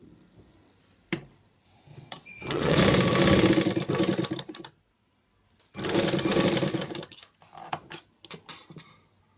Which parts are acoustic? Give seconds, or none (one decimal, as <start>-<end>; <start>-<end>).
0.0-1.9; 2.8-9.4